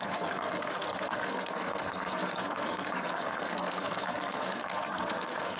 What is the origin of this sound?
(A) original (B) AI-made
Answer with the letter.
B